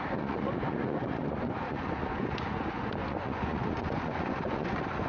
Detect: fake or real fake